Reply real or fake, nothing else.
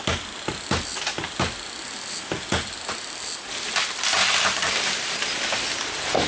real